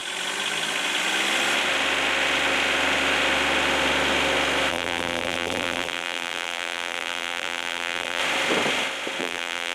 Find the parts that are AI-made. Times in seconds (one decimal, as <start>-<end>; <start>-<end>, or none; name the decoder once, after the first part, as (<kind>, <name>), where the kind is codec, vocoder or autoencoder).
4.7-8.2 (vocoder, BigVGAN v2); 9.2-9.7

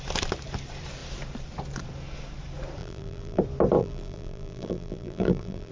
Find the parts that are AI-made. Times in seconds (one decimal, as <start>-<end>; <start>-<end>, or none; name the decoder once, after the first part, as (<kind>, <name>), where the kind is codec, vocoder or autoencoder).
2.8-3.4 (vocoder, BigVGAN v2); 3.8-5.7

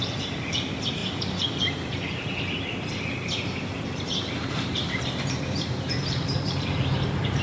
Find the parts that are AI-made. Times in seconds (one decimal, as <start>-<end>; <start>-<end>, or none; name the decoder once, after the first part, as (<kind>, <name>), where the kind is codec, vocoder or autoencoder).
0.0-1.0 (vocoder, BigVGAN v2); 1.6-7.4

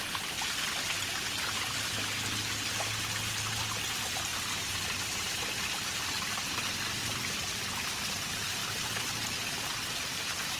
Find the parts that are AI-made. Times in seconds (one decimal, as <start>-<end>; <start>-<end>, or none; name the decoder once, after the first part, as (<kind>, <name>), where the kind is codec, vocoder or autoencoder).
0.0-0.7 (vocoder, BigVGAN v2); 4.3-5.6; 7.0-7.6; 8.6-9.1

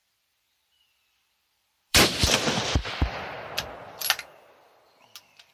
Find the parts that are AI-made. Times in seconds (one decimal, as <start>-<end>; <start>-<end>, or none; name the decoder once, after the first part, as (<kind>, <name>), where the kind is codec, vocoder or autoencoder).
0.0-2.6 (vocoder, BigVGAN v2)

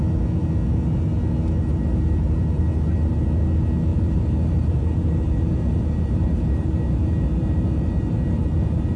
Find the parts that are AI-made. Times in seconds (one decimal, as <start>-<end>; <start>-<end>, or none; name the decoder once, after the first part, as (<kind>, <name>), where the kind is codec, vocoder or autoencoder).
1.7-2.6 (vocoder, BigVGAN v2); 3.9-9.0

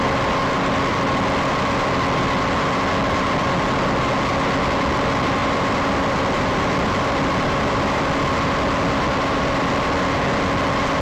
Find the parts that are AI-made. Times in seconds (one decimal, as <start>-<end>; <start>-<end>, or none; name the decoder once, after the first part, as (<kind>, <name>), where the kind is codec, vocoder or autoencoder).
5.4-10.1 (vocoder, BigVGAN v2)

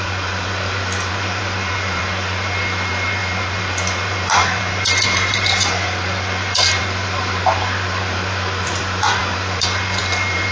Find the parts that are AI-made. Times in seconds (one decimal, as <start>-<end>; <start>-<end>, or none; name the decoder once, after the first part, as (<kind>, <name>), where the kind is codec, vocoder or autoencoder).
0.0-10.5 (vocoder, BigVGAN v2)